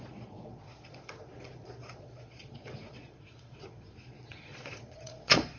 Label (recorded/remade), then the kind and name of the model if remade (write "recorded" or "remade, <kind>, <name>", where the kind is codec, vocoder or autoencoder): remade, vocoder, Vocos